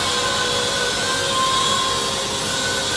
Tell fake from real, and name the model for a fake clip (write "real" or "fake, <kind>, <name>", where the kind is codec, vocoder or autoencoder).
real